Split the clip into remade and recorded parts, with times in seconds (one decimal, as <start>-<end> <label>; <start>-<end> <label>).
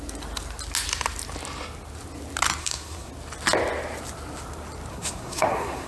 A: 0.0-2.6 recorded; 2.6-3.1 remade; 3.1-4.9 recorded; 4.9-5.9 remade